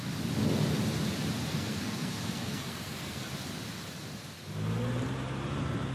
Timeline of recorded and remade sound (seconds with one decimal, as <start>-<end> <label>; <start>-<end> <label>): 0.0-1.5 recorded; 1.5-3.3 remade; 3.3-5.9 recorded